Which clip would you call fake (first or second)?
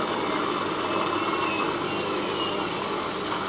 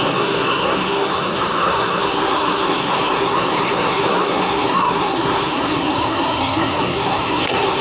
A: second